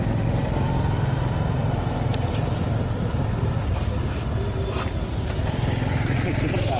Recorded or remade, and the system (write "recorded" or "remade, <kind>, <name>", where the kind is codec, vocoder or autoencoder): recorded